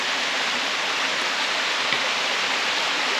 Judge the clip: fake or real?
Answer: real